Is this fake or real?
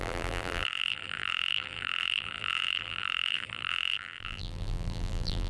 fake